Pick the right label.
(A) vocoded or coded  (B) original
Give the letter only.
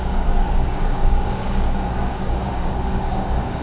A